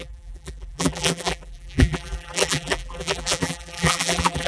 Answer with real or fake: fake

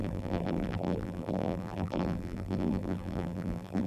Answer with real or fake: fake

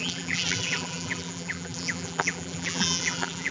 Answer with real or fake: fake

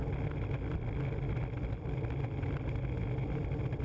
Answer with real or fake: real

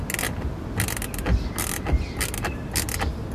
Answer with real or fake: real